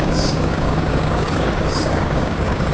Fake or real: fake